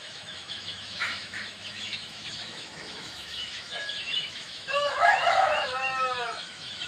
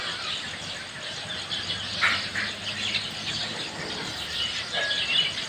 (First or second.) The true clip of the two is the second